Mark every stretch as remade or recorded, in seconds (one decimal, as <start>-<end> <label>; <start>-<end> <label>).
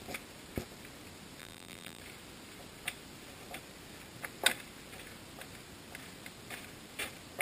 0.0-1.4 recorded; 1.4-2.0 remade; 2.0-7.4 recorded